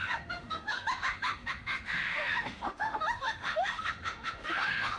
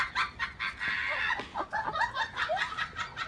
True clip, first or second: second